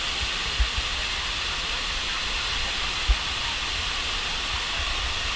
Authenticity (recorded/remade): recorded